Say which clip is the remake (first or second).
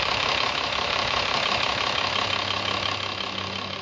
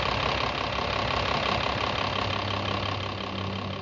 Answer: first